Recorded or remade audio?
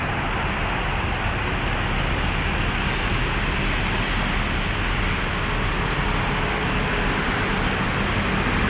recorded